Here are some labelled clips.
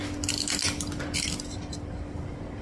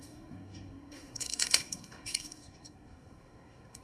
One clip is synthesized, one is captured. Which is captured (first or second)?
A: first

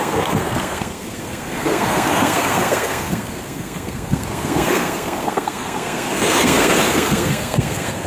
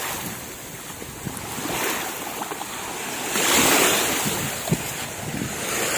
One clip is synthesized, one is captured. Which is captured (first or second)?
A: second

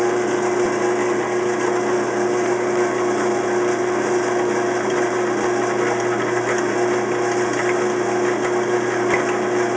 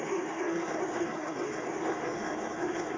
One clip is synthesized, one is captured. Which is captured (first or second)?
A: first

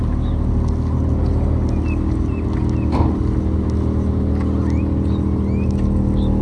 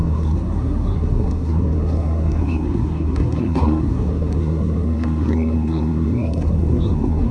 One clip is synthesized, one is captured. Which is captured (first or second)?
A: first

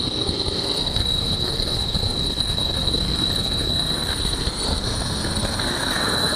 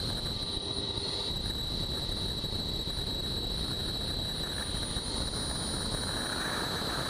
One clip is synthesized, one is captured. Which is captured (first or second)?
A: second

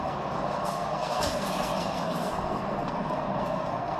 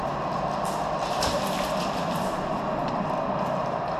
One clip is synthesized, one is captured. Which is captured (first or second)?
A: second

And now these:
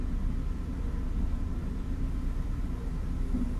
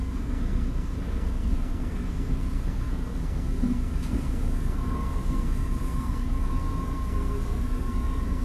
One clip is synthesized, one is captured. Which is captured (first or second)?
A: first